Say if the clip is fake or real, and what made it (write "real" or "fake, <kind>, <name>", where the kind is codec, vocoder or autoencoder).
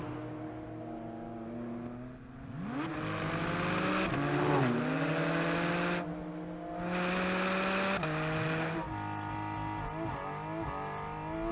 real